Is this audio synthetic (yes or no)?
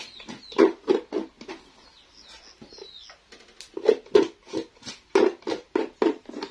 no